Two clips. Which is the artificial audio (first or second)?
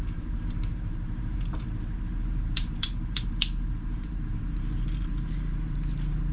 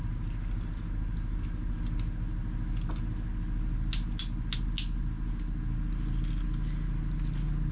first